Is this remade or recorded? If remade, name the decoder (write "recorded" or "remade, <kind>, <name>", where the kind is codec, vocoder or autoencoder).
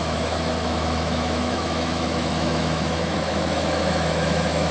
remade, autoencoder, DAC-VAE